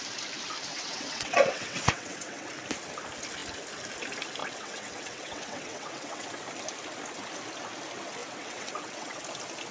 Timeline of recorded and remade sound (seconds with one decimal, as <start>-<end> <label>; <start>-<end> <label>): 0.0-0.7 recorded; 0.7-2.5 remade; 2.5-4.4 recorded; 4.4-6.3 remade; 6.3-8.2 recorded; 8.2-9.2 remade; 9.2-9.7 recorded